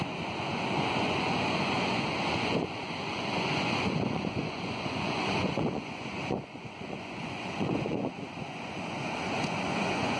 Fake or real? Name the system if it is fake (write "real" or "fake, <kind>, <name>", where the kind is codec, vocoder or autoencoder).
fake, vocoder, Vocos